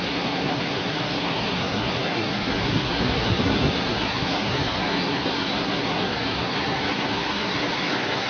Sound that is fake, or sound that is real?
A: fake